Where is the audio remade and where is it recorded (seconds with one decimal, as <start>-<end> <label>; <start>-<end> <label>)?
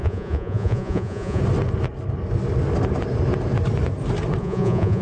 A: 0.0-1.4 remade; 1.4-4.4 recorded; 4.4-5.0 remade